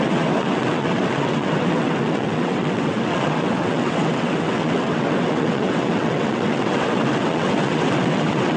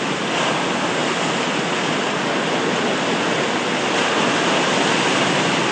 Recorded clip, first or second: second